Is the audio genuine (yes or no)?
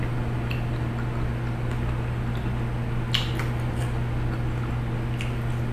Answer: yes